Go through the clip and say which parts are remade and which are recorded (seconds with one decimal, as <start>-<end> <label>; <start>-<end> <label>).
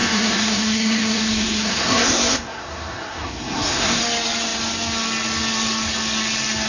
0.0-4.0 remade; 4.0-6.7 recorded